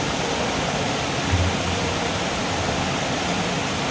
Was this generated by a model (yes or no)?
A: no